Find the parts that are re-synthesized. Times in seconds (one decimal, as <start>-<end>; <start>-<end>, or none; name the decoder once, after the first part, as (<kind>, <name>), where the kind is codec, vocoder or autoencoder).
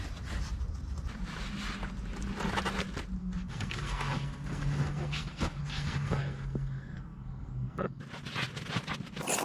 3.2-8.0 (codec, SNAC)